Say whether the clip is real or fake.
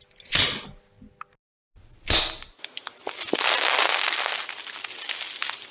real